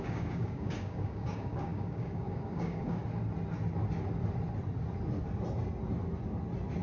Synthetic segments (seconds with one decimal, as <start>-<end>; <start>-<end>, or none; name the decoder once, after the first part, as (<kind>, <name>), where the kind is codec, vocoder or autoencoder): 0.0-3.0 (codec, DAC)